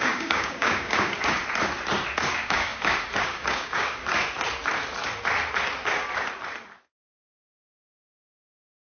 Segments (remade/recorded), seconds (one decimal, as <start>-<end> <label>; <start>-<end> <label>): 0.0-1.4 remade; 1.4-2.3 recorded; 2.3-4.0 remade; 4.0-7.8 recorded; 7.8-8.9 remade